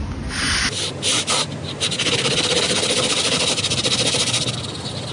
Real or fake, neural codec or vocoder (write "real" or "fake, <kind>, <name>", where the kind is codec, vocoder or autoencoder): real